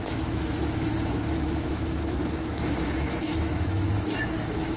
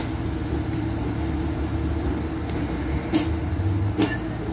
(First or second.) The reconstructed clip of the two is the first